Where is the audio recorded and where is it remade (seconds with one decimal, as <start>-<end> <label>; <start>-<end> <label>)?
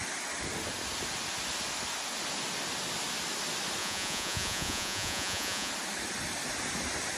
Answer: 0.0-3.8 recorded; 3.8-5.7 remade; 5.7-7.2 recorded